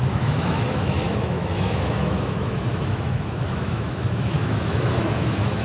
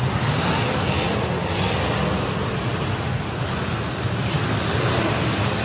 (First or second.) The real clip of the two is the second